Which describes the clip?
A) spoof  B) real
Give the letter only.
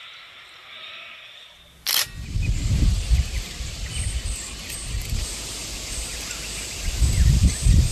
B